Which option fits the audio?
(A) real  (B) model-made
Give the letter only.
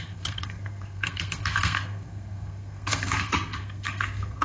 B